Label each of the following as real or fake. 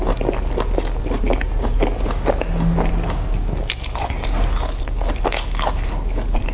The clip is real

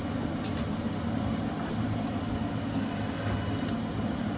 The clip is real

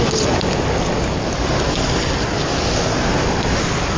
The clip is real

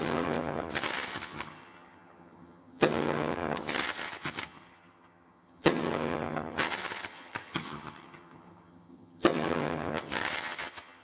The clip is fake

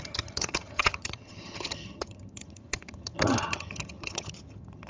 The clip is fake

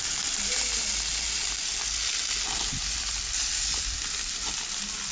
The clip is real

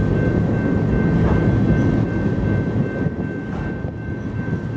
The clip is real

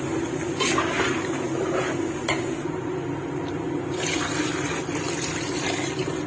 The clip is real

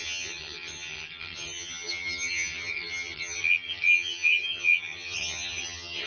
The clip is fake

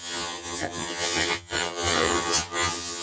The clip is fake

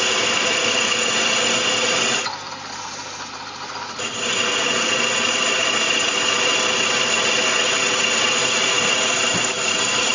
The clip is real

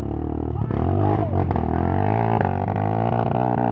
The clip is real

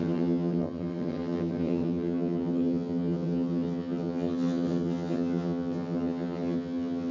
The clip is fake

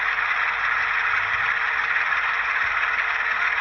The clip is real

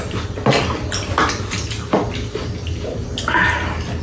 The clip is real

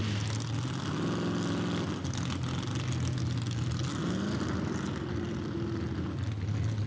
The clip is real